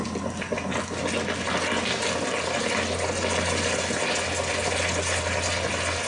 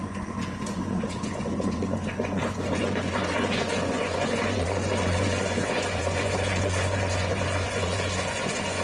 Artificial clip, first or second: second